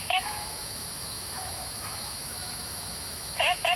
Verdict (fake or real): fake